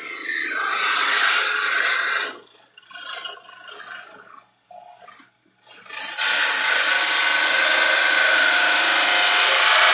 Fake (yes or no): no